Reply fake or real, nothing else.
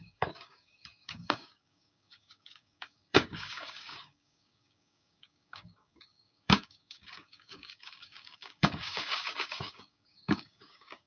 fake